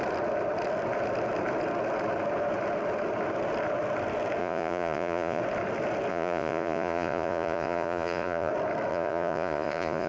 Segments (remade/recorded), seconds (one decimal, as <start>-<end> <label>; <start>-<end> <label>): 0.0-4.4 recorded; 4.4-5.4 remade; 5.4-6.1 recorded; 6.1-8.5 remade; 8.5-8.9 recorded; 8.9-10.1 remade